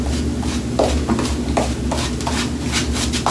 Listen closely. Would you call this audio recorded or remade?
recorded